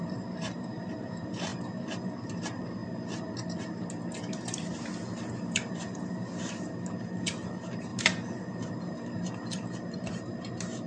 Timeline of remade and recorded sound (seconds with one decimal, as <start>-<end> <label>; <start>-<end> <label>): 0.0-2.8 remade; 2.8-4.3 recorded; 4.3-4.9 remade; 4.9-5.7 recorded; 5.7-10.9 remade